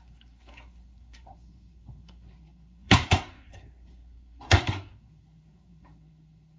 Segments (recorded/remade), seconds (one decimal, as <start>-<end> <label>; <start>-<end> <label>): 0.0-6.6 remade